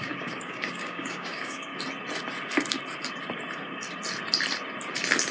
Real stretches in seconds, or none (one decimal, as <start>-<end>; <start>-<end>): 1.7-5.3